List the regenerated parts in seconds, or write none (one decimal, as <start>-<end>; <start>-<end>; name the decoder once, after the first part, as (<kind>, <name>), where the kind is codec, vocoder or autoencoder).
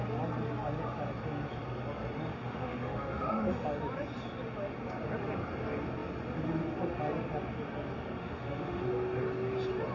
2.3-3.6 (autoencoder, DAC-VAE); 8.2-8.8